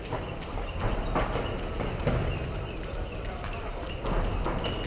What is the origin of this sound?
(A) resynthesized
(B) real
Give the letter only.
B